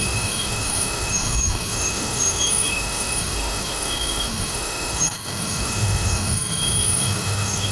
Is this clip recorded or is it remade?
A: remade